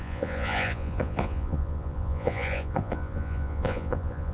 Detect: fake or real fake